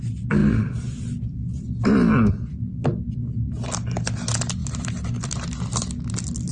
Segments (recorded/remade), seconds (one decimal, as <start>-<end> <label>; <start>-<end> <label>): 0.0-6.5 recorded